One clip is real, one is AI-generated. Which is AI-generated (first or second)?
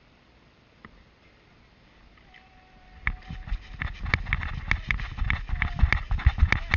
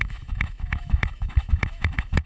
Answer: second